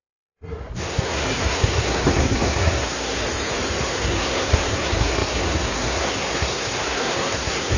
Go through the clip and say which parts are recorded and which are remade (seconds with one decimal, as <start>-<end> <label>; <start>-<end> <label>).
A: 0.0-3.2 remade; 3.2-3.8 recorded; 3.8-7.8 remade